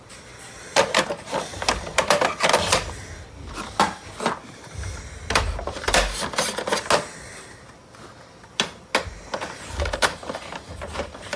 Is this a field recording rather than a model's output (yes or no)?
yes